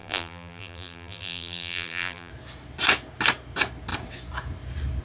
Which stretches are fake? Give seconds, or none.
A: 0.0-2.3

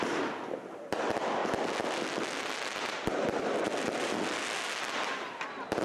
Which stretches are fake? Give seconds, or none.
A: none

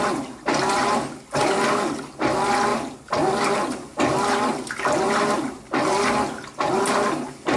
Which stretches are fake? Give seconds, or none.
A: none

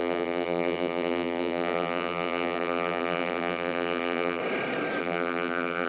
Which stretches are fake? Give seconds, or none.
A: 0.0-4.4; 5.0-5.9

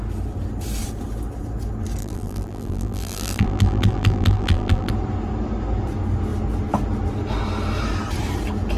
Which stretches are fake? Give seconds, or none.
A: 2.0-4.9